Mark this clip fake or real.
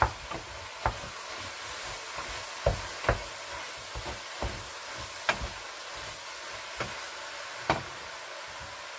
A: real